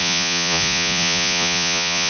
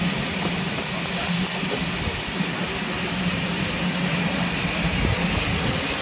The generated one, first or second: first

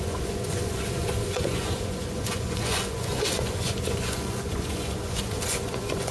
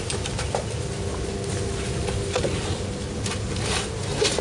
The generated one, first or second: first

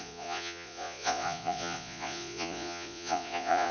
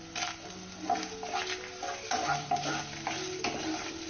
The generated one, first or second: first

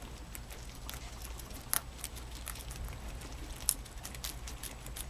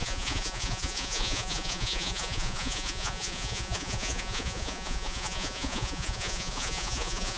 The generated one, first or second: second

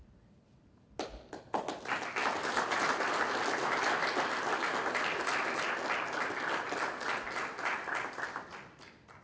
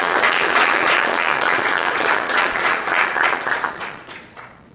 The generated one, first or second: second